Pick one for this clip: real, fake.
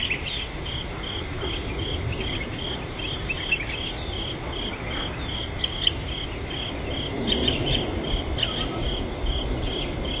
real